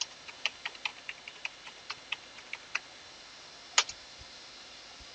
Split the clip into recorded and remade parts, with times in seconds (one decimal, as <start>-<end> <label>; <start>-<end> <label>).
0.0-5.1 recorded